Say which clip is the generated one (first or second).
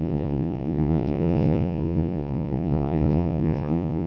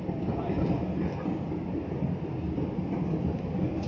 first